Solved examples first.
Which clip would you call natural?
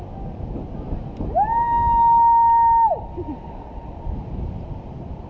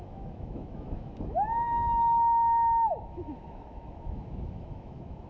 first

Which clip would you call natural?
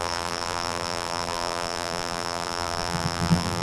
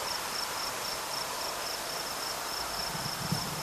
second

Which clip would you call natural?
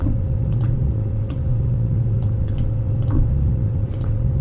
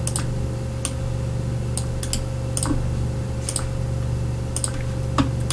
second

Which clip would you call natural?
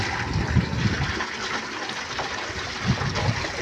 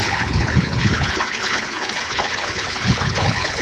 first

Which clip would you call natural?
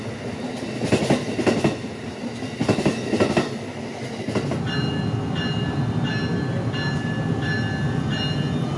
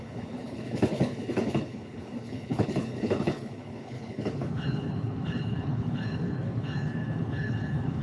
first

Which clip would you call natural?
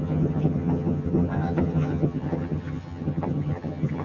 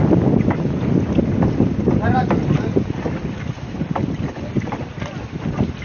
second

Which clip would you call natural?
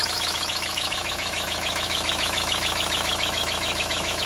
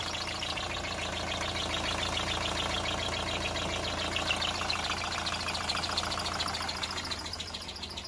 second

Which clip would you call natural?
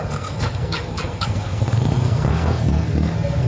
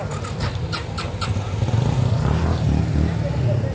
second